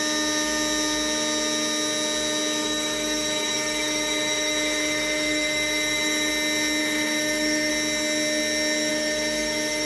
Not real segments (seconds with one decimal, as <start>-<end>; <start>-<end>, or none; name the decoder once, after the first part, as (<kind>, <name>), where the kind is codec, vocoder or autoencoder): 2.6-6.3 (autoencoder, DAC-VAE); 6.8-7.7; 8.9-9.9

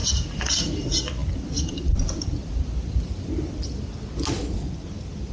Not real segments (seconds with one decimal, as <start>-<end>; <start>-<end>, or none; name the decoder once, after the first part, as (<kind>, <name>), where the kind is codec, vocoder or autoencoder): none

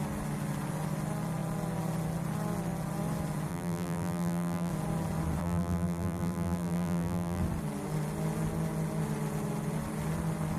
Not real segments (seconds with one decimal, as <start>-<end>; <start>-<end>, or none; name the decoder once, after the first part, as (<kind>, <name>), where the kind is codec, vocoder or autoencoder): 3.5-4.7 (vocoder, BigVGAN v2); 5.4-7.4

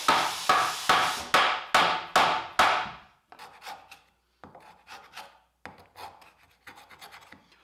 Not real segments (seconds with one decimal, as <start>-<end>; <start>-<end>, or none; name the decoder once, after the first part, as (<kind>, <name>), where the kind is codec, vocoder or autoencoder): none